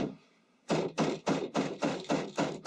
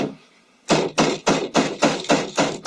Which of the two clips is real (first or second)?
second